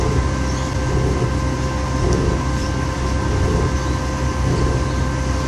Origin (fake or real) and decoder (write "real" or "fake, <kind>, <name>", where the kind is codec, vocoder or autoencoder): real